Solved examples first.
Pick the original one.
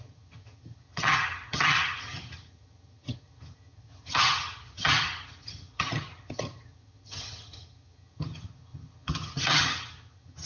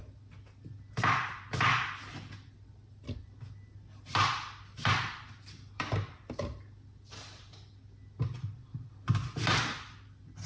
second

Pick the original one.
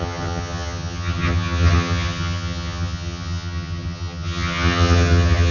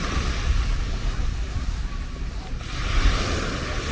second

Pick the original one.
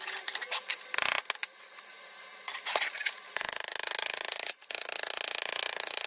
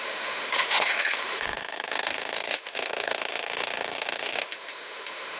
first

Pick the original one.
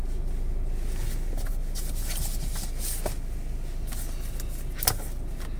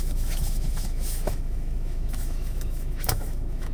first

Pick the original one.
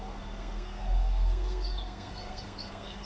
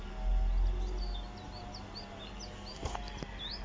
second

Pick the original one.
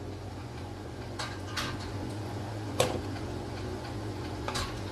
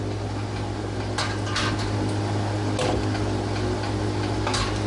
second